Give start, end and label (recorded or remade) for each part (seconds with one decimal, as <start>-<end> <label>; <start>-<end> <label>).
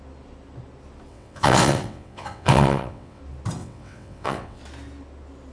0.0-1.1 recorded; 1.1-3.2 remade; 3.2-3.6 recorded; 3.6-4.6 remade; 4.6-5.5 recorded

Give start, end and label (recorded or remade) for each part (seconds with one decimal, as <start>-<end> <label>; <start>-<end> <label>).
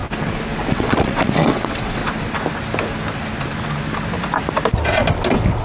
0.0-0.7 recorded; 0.7-2.0 remade; 2.0-5.6 recorded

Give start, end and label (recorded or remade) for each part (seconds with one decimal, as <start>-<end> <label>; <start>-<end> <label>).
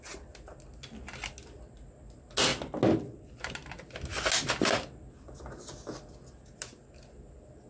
0.0-7.7 recorded